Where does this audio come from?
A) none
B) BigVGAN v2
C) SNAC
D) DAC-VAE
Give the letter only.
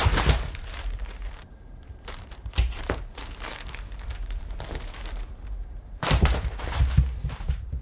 B